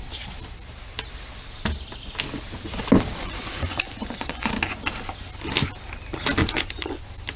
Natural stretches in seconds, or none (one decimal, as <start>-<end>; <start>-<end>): 0.0-3.2; 4.5-6.4; 7.0-7.4